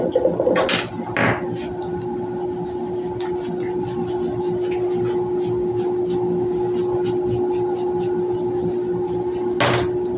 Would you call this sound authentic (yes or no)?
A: yes